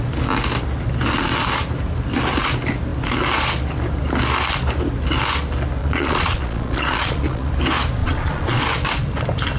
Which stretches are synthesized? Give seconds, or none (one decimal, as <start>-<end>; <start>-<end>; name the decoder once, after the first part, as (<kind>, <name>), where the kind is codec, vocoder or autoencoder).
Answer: 5.8-7.5 (vocoder, Vocos); 8.0-8.6